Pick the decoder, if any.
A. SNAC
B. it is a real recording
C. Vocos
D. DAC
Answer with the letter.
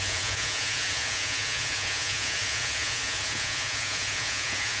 C